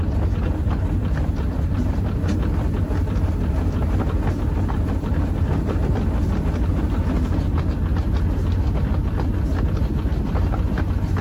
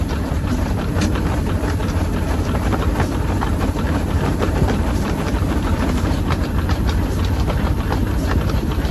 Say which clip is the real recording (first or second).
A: first